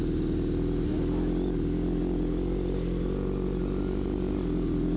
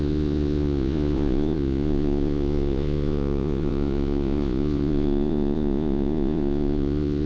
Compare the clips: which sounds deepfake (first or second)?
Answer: second